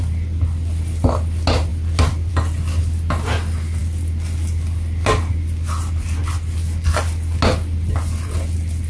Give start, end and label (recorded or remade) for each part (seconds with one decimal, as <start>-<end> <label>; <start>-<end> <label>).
0.0-8.9 recorded